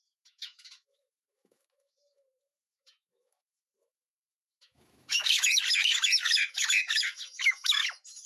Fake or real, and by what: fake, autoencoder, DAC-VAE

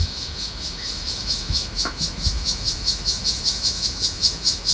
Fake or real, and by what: fake, autoencoder, DAC-VAE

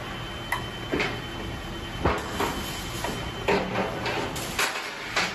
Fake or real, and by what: real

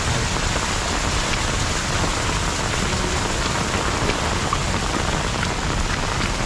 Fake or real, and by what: real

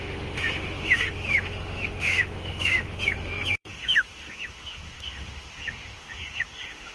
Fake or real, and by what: fake, autoencoder, DAC-VAE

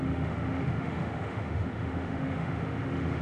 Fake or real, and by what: fake, autoencoder, DAC-VAE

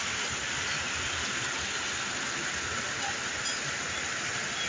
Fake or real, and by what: real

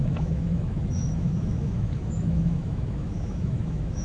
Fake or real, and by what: fake, autoencoder, DAC-VAE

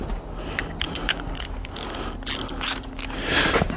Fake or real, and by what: real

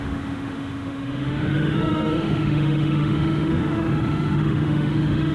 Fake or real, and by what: fake, autoencoder, DAC-VAE